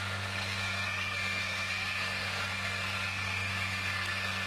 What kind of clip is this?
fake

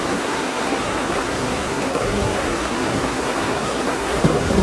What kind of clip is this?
fake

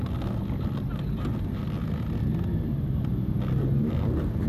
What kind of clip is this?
real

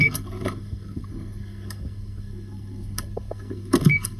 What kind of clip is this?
fake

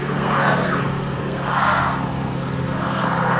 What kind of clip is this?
fake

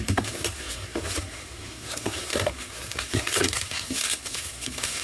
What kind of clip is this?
fake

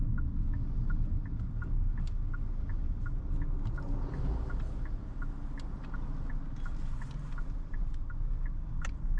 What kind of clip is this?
real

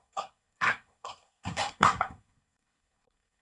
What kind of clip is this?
fake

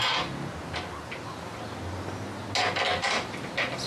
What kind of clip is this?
real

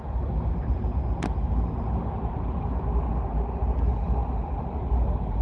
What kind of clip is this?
real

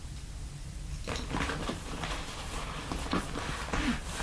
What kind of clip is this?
real